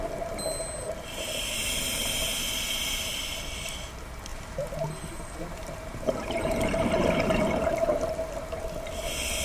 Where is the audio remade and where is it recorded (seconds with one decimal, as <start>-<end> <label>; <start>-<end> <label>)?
0.0-4.3 recorded; 4.3-7.7 remade; 7.7-9.4 recorded

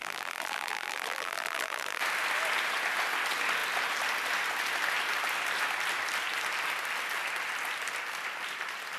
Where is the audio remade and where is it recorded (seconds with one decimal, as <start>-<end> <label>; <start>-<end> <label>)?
0.0-2.0 remade; 2.0-9.0 recorded

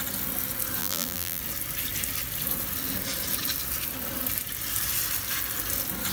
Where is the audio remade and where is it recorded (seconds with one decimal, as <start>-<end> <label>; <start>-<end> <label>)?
0.0-0.8 recorded; 0.8-1.4 remade; 1.4-6.1 recorded

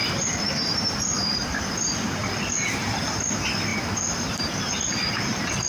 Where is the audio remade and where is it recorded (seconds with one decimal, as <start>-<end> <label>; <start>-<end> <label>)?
0.0-0.9 remade; 0.9-2.2 recorded; 2.2-3.0 remade; 3.0-3.7 recorded; 3.7-4.8 remade; 4.8-5.7 recorded

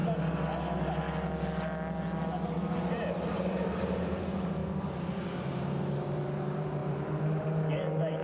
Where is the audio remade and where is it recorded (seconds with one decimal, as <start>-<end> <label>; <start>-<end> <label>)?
0.0-3.1 recorded; 3.1-4.6 remade; 4.6-5.4 recorded; 5.4-6.8 remade; 6.8-7.3 recorded; 7.3-8.2 remade

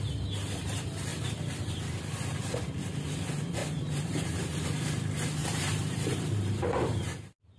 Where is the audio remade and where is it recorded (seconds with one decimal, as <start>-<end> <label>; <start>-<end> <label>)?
0.0-3.6 recorded; 3.6-4.6 remade; 4.6-5.4 recorded; 5.4-7.0 remade; 7.0-7.6 recorded

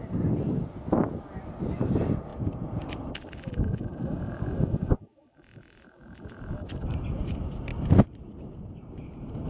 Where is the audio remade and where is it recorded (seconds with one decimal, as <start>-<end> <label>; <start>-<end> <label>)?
0.0-9.5 recorded

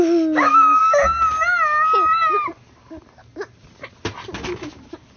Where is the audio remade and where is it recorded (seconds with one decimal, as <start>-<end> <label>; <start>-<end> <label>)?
0.0-5.2 recorded